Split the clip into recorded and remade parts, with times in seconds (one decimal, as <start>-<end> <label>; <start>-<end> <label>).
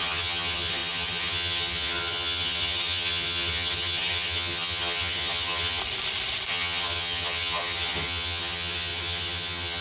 0.0-5.8 remade; 5.8-6.5 recorded; 6.5-9.8 remade